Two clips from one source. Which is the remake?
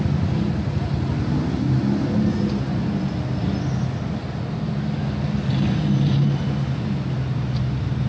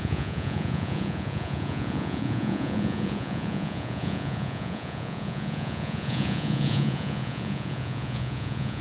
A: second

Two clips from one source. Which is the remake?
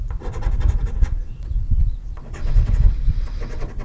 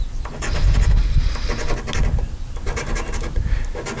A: first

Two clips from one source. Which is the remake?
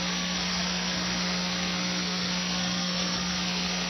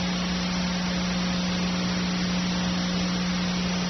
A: first